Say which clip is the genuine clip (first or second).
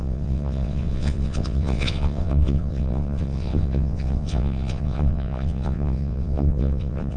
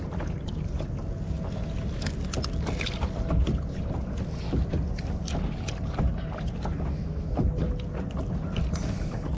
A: second